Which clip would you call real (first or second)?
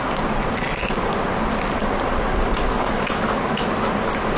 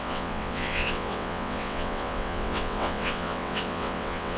first